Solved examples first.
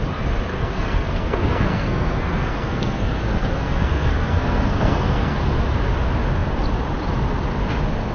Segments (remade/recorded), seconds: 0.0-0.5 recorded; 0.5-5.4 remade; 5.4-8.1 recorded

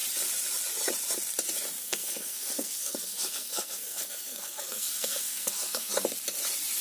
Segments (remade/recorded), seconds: 0.0-1.8 recorded; 1.8-5.9 remade; 5.9-6.8 recorded

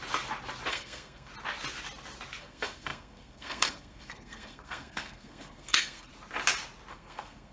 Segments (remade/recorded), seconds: 0.0-0.7 recorded; 0.7-1.3 remade; 1.3-2.4 recorded; 2.4-6.1 remade; 6.1-6.9 recorded; 6.9-7.5 remade

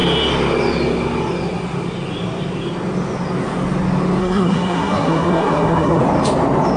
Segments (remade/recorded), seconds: 0.0-4.2 recorded; 4.2-6.0 remade; 6.0-6.8 recorded

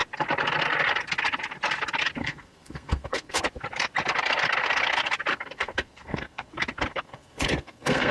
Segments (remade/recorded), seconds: 0.0-2.2 recorded; 2.2-3.4 remade; 3.4-5.3 recorded; 5.3-6.5 remade; 6.5-6.9 recorded; 6.9-8.1 remade

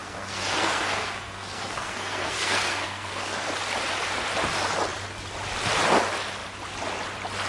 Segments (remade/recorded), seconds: 0.0-3.5 remade; 3.5-7.5 recorded

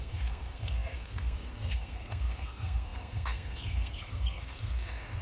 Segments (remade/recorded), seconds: 0.0-5.2 remade

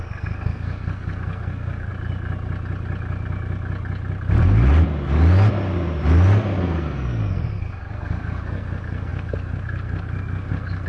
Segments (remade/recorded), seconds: 0.0-1.9 remade; 1.9-6.6 recorded; 6.6-10.9 remade